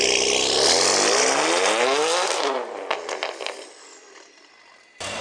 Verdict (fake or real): real